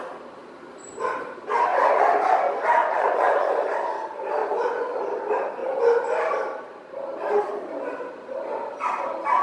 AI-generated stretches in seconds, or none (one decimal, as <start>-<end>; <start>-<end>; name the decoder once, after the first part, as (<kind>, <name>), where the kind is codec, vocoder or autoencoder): 1.7-2.3 (vocoder, Vocos); 2.8-3.5; 4.4-5.0